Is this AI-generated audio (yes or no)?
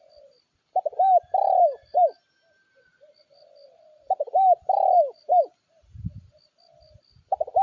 no